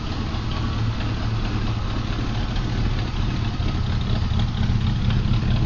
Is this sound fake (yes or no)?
no